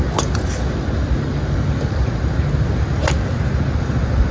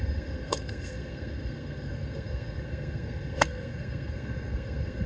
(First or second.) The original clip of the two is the first